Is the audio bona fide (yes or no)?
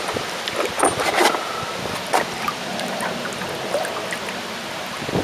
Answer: yes